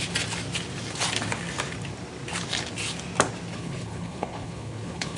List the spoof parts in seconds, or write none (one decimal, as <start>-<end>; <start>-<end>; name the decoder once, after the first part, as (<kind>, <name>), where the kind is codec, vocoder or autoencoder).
3.5-5.2 (codec, HILCodec)